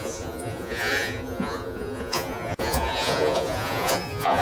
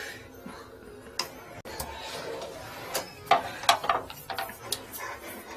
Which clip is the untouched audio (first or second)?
second